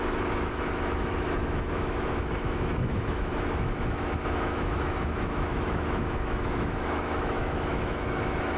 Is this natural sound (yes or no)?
no